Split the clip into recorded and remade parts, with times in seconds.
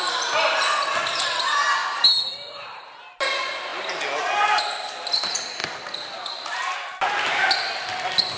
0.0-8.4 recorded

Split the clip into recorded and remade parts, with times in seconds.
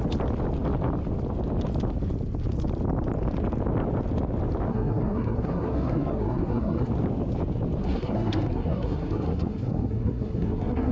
0.0-4.7 recorded; 4.7-6.9 remade; 6.9-7.8 recorded; 7.8-10.9 remade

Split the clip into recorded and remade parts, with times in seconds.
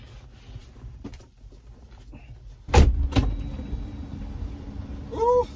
0.0-0.6 recorded; 0.6-1.5 remade; 1.5-3.2 recorded; 3.2-4.2 remade; 4.2-5.6 recorded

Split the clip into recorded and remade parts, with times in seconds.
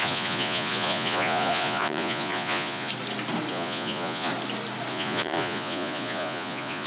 0.0-2.9 remade; 2.9-3.5 recorded; 3.5-4.3 remade; 4.3-4.9 recorded; 4.9-6.9 remade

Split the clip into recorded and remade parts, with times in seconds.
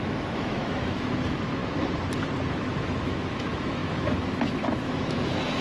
0.0-1.6 remade; 1.6-2.5 recorded; 2.5-5.6 remade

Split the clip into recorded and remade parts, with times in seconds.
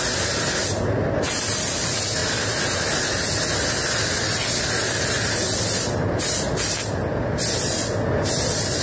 0.0-8.8 recorded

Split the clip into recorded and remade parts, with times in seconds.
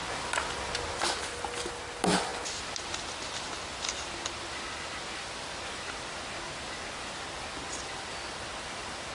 0.0-9.1 recorded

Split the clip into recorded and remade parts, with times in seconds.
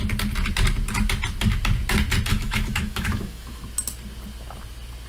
0.0-2.3 recorded; 2.3-3.6 remade; 3.6-5.1 recorded